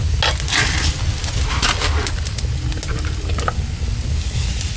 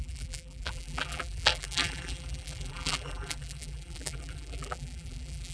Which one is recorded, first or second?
first